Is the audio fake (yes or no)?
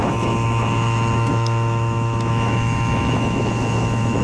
yes